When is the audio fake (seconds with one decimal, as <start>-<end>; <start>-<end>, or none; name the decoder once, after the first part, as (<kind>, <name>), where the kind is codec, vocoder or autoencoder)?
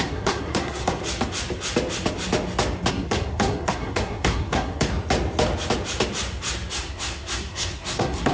0.0-1.0 (codec, SNAC); 2.9-4.9; 6.7-8.3